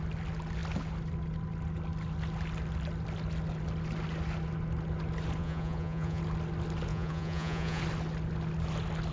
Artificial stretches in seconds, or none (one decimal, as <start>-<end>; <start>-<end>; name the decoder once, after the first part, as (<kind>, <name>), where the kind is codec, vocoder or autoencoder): 5.4-6.2 (vocoder, Vocos); 6.9-7.8